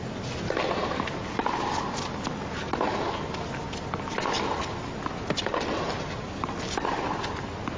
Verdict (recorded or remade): recorded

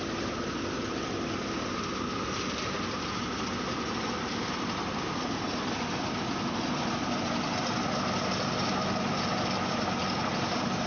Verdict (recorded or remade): recorded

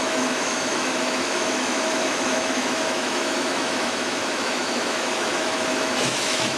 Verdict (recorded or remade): remade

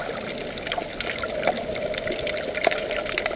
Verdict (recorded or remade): recorded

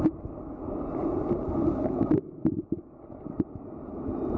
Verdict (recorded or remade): recorded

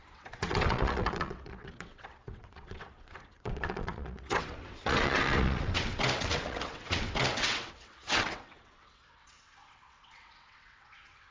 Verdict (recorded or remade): remade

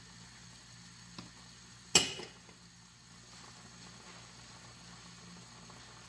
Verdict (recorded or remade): recorded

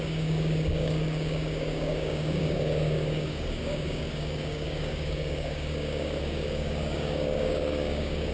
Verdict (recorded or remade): remade